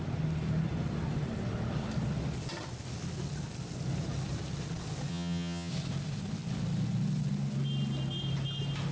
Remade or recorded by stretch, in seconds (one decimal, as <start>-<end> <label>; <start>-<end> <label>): 0.0-5.1 recorded; 5.1-5.7 remade; 5.7-8.9 recorded